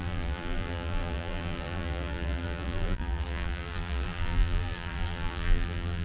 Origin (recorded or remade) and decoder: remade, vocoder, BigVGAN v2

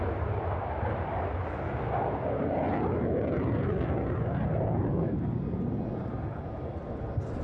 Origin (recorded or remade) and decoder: recorded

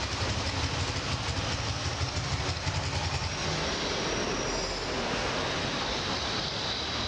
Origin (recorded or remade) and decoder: recorded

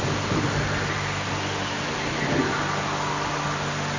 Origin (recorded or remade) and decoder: recorded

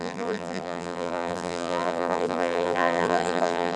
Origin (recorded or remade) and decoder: remade, vocoder, BigVGAN v2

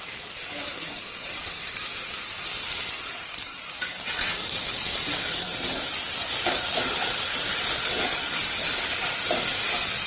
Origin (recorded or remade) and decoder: recorded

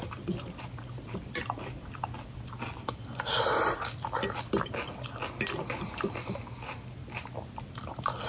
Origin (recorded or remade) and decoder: recorded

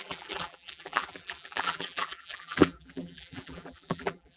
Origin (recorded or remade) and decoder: remade, vocoder, BigVGAN v2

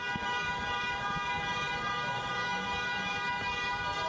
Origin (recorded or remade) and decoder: remade, vocoder, BigVGAN v2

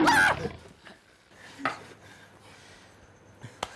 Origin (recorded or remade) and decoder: recorded